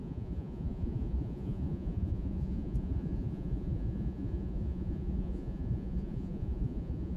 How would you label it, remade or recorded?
remade